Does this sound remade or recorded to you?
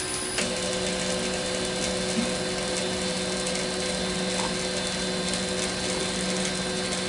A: recorded